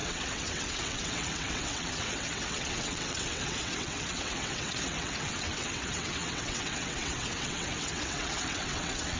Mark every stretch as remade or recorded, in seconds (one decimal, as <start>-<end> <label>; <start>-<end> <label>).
0.0-9.2 remade